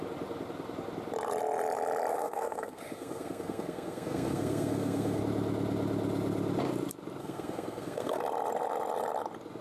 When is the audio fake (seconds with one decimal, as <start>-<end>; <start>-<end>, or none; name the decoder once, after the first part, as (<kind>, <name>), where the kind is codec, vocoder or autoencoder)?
2.1-5.2 (codec, SNAC); 7.2-8.2